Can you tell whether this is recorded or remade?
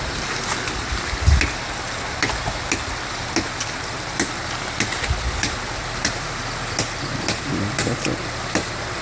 recorded